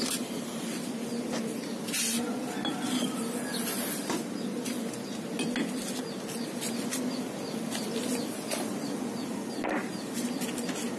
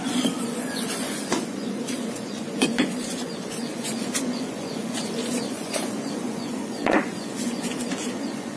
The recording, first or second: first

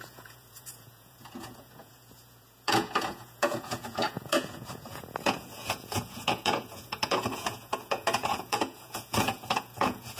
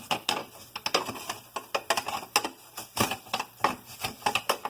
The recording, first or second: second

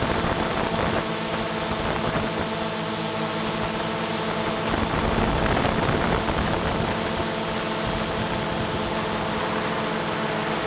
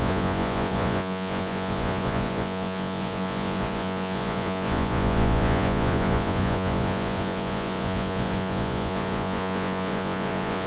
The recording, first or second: first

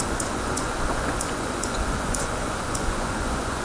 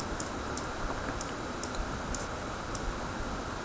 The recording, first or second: second